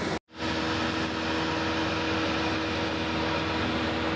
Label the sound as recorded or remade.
recorded